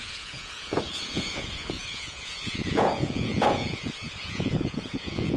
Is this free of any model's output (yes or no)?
no